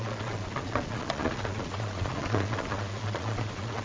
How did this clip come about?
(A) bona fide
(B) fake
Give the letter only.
B